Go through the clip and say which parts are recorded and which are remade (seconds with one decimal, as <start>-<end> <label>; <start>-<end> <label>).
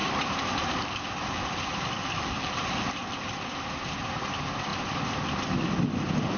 0.0-3.5 remade; 3.5-6.4 recorded